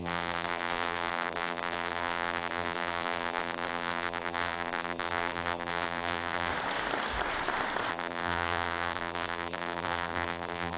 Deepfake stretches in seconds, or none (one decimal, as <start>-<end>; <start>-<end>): 0.0-6.5; 7.9-10.8

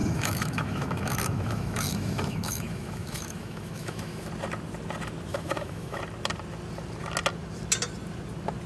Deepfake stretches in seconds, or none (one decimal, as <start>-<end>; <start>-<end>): 0.0-4.3; 5.3-6.0